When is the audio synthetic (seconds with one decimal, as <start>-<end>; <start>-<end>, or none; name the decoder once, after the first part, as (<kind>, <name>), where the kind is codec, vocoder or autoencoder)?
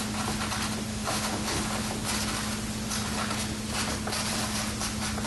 0.9-1.6 (autoencoder, DAC-VAE)